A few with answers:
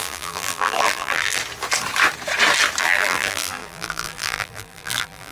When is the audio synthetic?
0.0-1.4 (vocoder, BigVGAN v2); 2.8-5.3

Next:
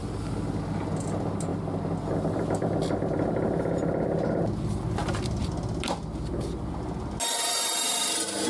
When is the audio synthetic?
none

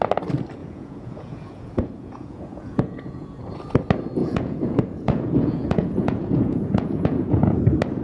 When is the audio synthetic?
0.6-3.4 (vocoder, Vocos); 4.2-7.6

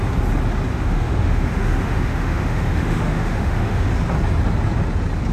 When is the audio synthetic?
0.7-3.9 (autoencoder, DAC-VAE)